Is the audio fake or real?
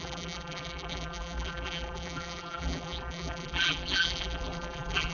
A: fake